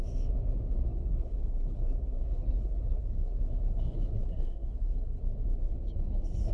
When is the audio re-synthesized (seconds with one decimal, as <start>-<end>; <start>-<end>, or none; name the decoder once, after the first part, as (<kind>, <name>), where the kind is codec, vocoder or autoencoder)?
0.9-4.1 (codec, HILCodec); 4.6-5.2